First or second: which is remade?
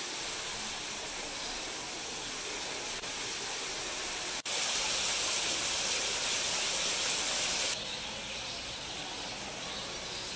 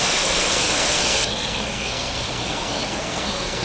second